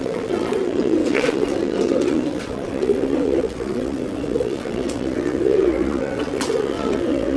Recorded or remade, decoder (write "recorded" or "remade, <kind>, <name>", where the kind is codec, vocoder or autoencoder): remade, vocoder, WaveNeXt